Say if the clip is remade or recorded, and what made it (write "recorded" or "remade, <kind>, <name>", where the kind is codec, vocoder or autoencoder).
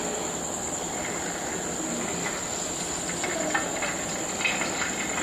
recorded